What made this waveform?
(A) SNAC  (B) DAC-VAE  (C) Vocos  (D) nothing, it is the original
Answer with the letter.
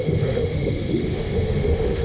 B